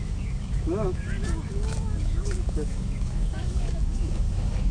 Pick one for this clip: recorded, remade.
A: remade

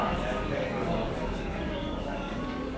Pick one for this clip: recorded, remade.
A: remade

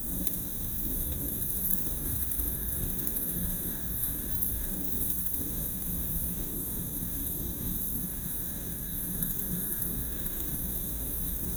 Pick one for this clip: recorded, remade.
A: remade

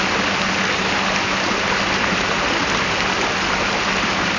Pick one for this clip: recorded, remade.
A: recorded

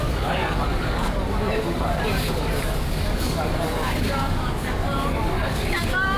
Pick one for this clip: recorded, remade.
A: remade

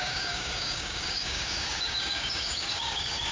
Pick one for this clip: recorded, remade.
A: remade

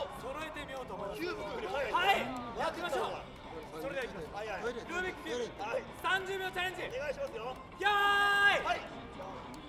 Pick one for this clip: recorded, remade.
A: recorded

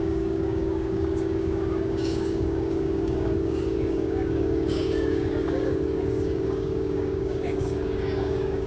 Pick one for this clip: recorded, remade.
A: remade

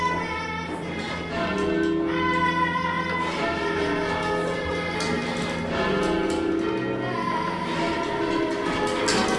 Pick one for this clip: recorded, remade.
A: recorded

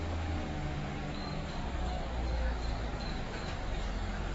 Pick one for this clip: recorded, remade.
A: remade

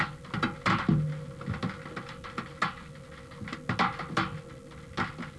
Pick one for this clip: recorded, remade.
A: recorded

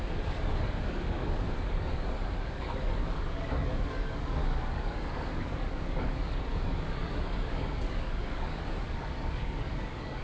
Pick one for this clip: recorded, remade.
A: remade